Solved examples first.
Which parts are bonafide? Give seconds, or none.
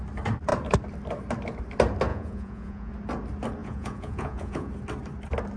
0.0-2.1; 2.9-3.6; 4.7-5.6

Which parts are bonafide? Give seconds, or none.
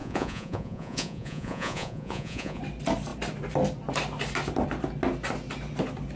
2.6-6.2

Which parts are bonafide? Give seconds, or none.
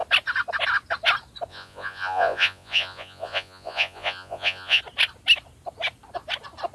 0.0-1.5; 4.8-6.7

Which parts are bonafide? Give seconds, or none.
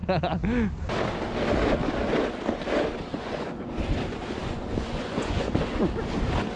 0.0-3.1; 3.7-4.4; 5.5-6.6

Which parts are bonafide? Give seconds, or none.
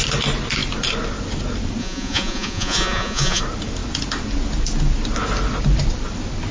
0.0-1.8; 3.4-6.5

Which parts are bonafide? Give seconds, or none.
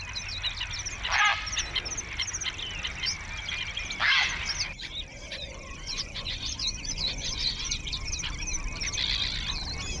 0.0-5.1; 8.1-10.0